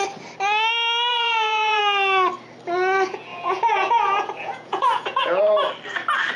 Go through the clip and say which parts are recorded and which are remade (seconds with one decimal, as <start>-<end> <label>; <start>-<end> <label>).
0.0-1.1 recorded; 1.1-1.8 remade; 1.8-3.3 recorded; 3.3-5.4 remade; 5.4-6.4 recorded